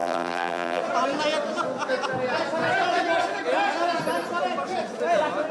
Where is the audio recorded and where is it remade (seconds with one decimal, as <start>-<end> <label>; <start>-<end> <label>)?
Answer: 0.0-0.8 remade; 0.8-5.5 recorded